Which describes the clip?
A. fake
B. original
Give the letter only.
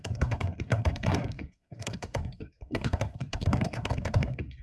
A